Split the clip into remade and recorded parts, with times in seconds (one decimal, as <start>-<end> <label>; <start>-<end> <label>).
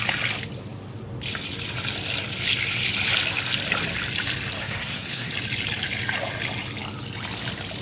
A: 0.0-4.6 recorded; 4.6-5.3 remade; 5.3-7.8 recorded